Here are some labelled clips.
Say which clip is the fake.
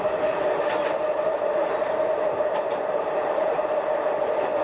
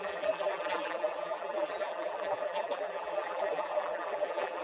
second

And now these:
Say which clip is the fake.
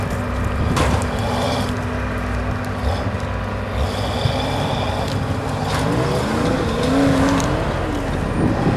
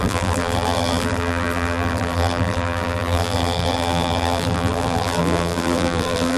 second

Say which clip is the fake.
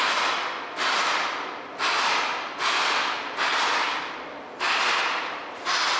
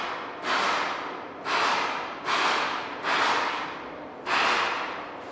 first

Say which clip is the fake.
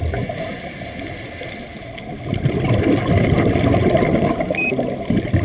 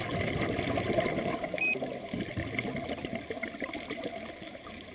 first